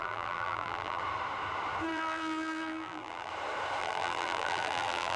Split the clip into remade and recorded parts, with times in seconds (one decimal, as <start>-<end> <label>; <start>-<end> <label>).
0.0-1.0 remade; 1.0-1.9 recorded; 1.9-3.3 remade; 3.3-3.8 recorded; 3.8-5.2 remade